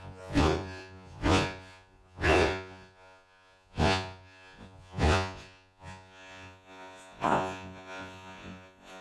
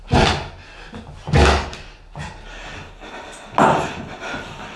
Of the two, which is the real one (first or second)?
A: second